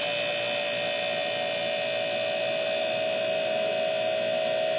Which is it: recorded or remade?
recorded